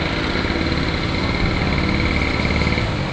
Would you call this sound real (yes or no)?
yes